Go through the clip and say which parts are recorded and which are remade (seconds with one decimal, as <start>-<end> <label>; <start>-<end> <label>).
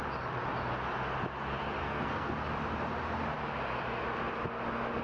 0.0-1.8 recorded; 1.8-2.3 remade; 2.3-5.0 recorded